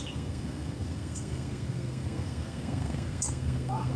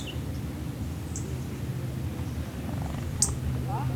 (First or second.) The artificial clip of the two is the first